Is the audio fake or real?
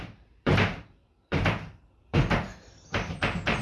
fake